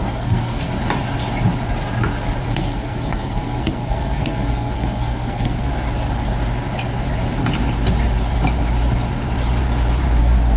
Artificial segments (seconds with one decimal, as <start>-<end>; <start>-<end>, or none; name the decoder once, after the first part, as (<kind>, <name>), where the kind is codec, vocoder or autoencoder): 0.0-0.7 (codec, SNAC); 2.5-5.7; 10.2-10.6